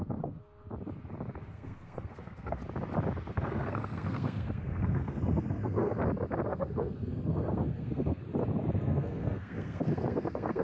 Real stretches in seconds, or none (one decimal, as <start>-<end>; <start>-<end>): 0.4-1.4; 2.6-3.3; 6.0-6.5; 8.2-8.8